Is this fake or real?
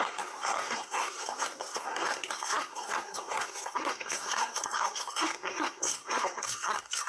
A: fake